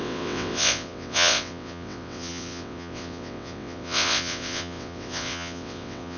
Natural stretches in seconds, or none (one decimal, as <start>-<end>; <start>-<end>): none

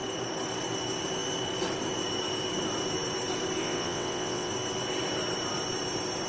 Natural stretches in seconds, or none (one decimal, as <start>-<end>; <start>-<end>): 0.0-3.6; 4.5-6.3

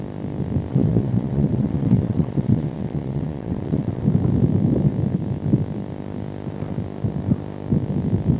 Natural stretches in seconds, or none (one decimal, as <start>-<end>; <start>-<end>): 0.0-0.7; 4.0-8.4

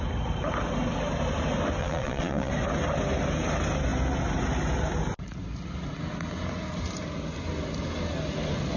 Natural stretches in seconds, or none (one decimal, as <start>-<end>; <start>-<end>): 0.0-1.8; 2.5-8.8